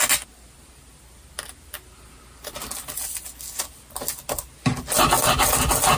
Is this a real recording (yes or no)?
yes